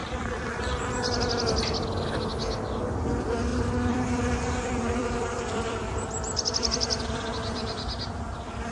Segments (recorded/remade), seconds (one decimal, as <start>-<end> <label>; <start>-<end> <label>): 0.0-0.6 remade; 0.6-3.5 recorded; 3.5-8.7 remade